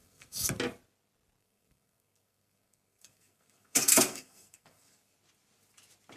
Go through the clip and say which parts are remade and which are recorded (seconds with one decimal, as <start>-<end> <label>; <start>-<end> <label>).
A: 0.0-0.5 remade; 0.5-1.4 recorded; 1.4-5.1 remade; 5.1-6.2 recorded